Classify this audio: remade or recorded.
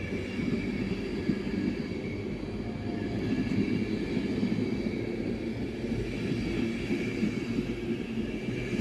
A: recorded